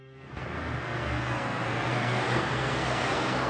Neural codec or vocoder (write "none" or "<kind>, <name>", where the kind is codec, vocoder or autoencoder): codec, SNAC